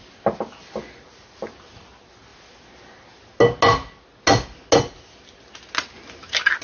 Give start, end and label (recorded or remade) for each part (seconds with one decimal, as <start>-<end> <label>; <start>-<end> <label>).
0.0-6.6 recorded